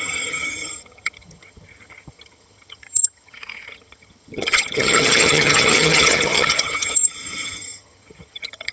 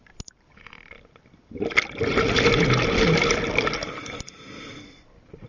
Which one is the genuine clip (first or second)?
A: second